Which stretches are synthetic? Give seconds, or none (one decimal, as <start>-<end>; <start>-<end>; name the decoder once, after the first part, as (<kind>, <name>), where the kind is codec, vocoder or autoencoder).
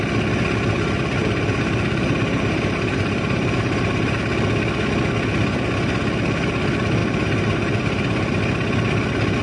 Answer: 1.2-4.2 (vocoder, BigVGAN v2); 7.0-8.4